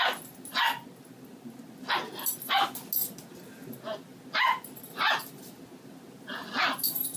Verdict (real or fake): real